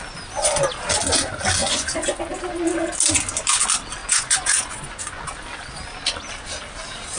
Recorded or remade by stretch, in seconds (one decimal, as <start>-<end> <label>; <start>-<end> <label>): 0.0-1.6 recorded; 1.6-2.2 remade; 2.2-4.0 recorded; 4.0-5.2 remade; 5.2-7.2 recorded